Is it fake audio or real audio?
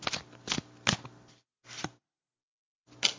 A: real